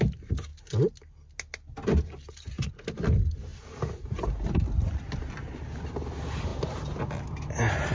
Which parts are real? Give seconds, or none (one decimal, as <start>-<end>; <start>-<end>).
0.0-3.5; 4.0-7.9